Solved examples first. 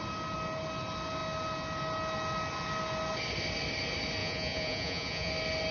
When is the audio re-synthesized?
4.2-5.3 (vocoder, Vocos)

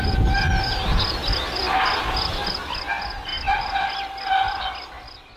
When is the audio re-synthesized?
none